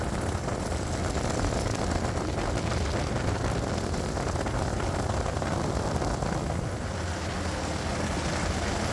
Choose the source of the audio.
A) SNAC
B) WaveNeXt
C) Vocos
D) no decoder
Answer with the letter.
D